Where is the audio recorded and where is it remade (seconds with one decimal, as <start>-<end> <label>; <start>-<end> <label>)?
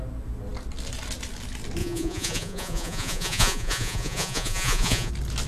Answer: 0.0-1.8 recorded; 1.8-5.1 remade; 5.1-5.5 recorded